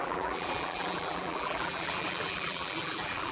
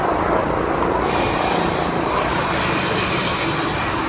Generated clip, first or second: first